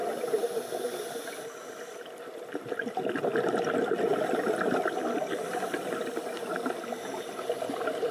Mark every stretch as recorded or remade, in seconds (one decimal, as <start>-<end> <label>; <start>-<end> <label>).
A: 0.0-8.1 recorded